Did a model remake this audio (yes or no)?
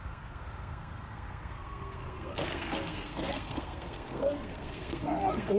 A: yes